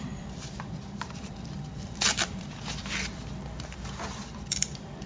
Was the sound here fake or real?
fake